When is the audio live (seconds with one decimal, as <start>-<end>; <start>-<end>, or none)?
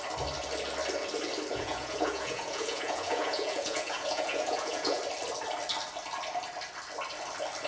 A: 0.0-1.5; 5.0-7.7